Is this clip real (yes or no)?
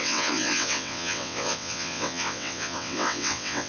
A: no